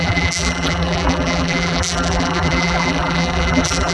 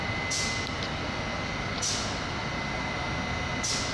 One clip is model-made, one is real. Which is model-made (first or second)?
first